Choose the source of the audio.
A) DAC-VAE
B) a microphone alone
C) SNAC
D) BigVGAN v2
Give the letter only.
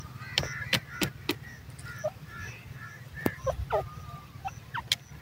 B